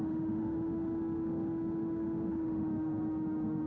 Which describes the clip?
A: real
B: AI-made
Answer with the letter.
B